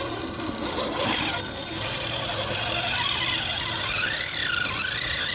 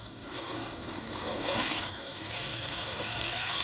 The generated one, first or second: second